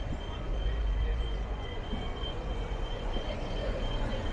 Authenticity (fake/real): fake